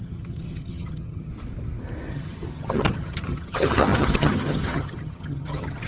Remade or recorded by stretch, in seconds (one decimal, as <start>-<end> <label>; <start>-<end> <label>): 0.0-1.3 remade; 1.3-2.1 recorded; 2.1-5.9 remade